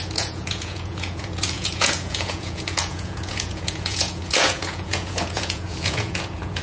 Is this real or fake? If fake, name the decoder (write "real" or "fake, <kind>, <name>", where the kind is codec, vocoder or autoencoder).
fake, vocoder, Vocos